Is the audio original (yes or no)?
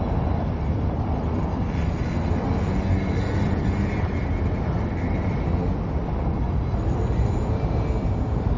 yes